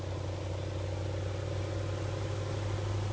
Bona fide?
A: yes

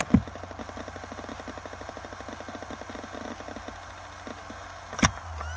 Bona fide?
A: yes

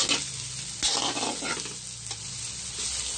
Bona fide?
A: yes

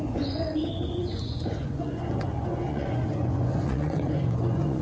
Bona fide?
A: no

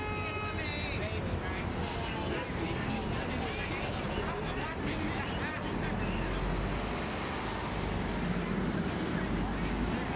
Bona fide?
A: yes